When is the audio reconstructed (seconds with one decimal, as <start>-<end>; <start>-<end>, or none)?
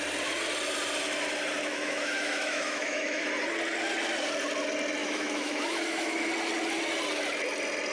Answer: 1.7-3.3; 5.0-6.3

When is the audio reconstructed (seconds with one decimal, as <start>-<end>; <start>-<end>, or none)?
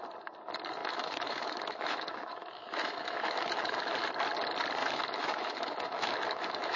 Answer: 0.8-3.9; 4.8-6.8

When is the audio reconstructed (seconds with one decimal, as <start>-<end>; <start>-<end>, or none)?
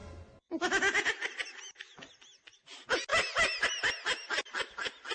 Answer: none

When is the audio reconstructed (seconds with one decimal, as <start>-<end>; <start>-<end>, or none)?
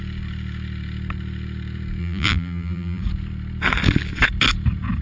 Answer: 2.0-3.0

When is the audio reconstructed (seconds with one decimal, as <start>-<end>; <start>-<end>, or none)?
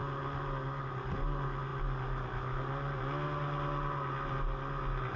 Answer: none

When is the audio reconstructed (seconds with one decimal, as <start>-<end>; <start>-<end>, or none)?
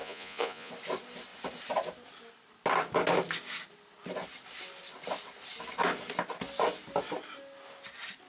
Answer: 0.0-0.7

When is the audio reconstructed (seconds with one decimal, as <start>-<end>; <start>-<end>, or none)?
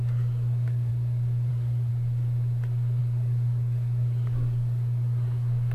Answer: 0.0-0.9; 1.5-1.9; 3.0-5.7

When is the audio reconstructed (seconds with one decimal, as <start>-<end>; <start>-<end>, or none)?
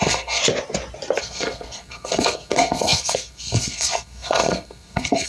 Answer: 0.0-0.4; 1.2-5.3